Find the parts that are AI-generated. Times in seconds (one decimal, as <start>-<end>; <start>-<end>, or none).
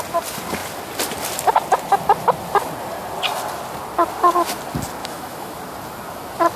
5.0-5.6